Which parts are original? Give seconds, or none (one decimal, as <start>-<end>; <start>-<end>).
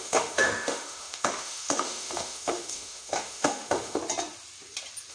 4.0-5.1